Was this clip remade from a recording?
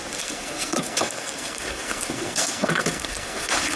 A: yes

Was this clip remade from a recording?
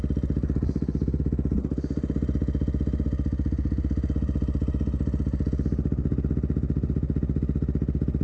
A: no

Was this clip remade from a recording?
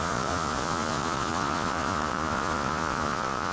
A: yes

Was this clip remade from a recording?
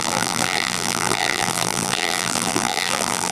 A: yes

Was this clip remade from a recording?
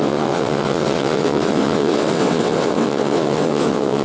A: yes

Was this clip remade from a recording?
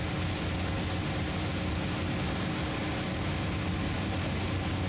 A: no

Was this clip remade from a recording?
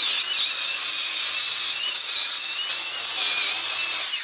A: no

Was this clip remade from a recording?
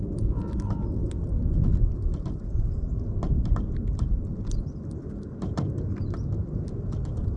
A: no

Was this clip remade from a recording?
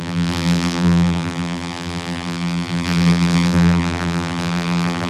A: yes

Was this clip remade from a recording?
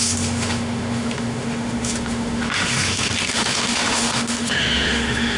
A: yes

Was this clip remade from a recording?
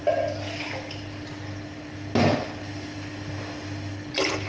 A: no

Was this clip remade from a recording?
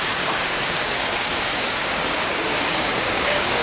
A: yes